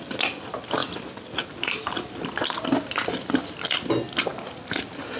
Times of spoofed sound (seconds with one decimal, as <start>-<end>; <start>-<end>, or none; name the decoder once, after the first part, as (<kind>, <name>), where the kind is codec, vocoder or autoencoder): none